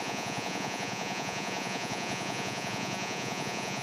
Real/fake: fake